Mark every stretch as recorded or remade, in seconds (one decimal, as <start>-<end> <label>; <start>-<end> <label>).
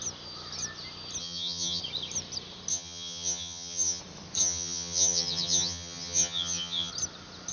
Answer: 0.0-1.2 recorded; 1.2-1.8 remade; 1.8-2.7 recorded; 2.7-4.0 remade; 4.0-4.4 recorded; 4.4-6.9 remade; 6.9-7.5 recorded